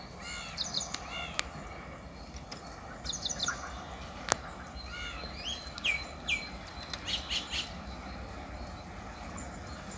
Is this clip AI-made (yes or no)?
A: no